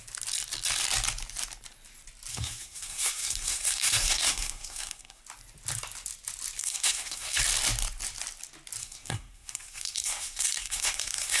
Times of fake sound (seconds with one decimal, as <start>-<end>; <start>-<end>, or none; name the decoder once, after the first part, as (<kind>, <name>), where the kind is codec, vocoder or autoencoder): 2.3-5.2 (codec, SNAC); 6.6-7.4; 8.8-11.4